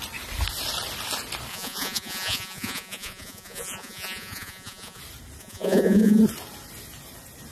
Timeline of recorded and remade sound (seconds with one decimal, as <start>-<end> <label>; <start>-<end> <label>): 0.0-1.5 recorded; 1.5-5.0 remade; 5.0-5.4 recorded; 5.4-6.2 remade; 6.2-7.5 recorded